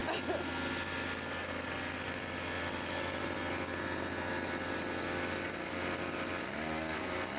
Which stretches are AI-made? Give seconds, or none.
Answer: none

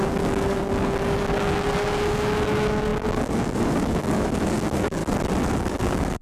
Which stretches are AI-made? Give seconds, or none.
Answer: 0.0-5.0 (codec, DAC); 5.6-6.2

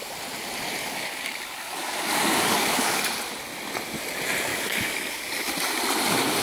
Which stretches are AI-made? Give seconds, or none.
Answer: 0.8-3.0 (codec, DAC); 4.5-5.5

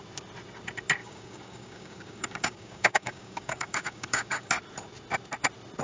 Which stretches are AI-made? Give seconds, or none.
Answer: 1.0-4.5 (codec, DAC)

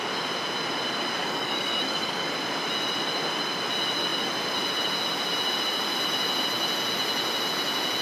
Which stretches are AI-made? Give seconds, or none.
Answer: 1.2-2.3 (codec, DAC)

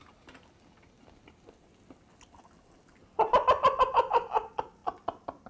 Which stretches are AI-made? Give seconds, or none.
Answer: none

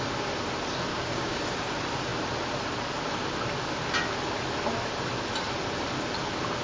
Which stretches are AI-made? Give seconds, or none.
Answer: 0.9-1.4 (codec, DAC)

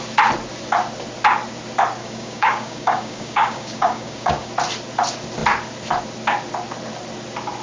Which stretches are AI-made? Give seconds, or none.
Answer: 2.0-4.5 (codec, DAC)